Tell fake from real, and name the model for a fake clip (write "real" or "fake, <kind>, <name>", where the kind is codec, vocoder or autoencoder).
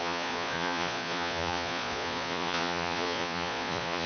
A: fake, vocoder, Vocos